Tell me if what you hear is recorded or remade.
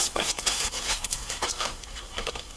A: remade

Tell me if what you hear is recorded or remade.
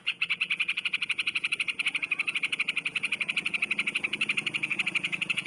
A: remade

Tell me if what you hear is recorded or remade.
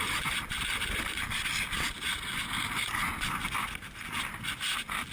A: recorded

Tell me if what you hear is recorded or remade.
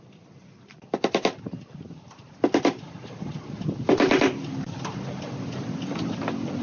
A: recorded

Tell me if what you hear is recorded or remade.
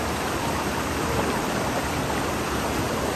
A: recorded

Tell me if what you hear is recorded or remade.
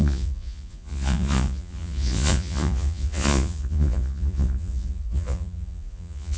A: remade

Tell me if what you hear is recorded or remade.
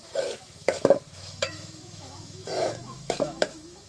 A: remade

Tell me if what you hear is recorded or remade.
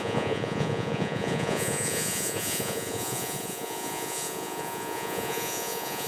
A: remade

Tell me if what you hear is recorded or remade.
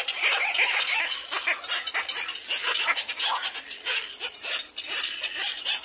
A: recorded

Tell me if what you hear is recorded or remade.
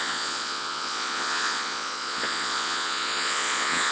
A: remade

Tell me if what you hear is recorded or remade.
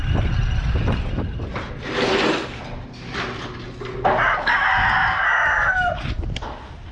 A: recorded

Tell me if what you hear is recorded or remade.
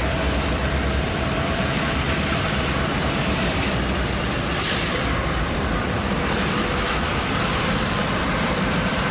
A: remade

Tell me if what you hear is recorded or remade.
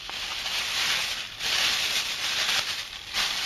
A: recorded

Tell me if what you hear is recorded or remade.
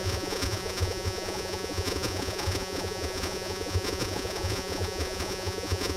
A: remade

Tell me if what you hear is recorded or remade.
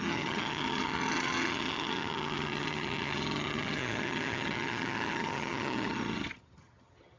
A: remade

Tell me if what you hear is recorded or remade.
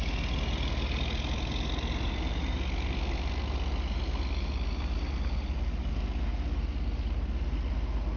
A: recorded